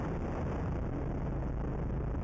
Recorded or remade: recorded